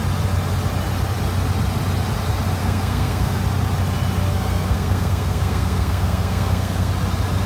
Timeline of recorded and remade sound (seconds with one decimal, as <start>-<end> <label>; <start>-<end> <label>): 0.0-2.6 recorded; 2.6-3.4 remade; 3.4-4.3 recorded; 4.3-6.9 remade; 6.9-7.5 recorded

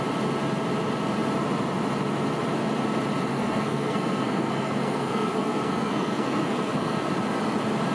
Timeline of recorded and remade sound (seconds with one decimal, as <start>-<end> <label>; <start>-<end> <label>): 0.0-3.3 recorded; 3.3-7.1 remade; 7.1-7.9 recorded

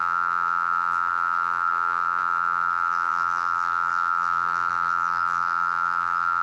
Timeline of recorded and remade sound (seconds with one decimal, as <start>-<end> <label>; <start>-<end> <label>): 0.0-6.4 remade

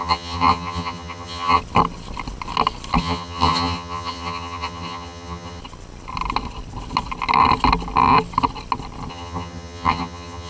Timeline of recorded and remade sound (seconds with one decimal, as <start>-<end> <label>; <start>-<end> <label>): 0.0-1.6 remade; 1.6-3.0 recorded; 3.0-5.6 remade; 5.6-9.1 recorded; 9.1-10.5 remade

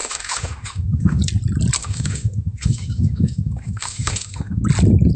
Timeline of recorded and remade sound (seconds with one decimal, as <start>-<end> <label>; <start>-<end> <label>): 0.0-1.2 remade; 1.2-1.8 recorded; 1.8-4.6 remade; 4.6-5.2 recorded

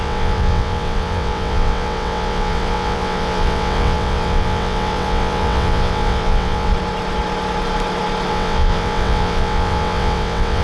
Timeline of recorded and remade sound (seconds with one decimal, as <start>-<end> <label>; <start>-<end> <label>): 0.0-6.7 remade; 6.7-8.3 recorded; 8.3-10.6 remade

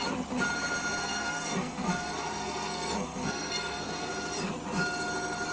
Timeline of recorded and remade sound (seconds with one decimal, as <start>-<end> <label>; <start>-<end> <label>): 0.0-1.0 recorded; 1.0-4.1 remade; 4.1-5.5 recorded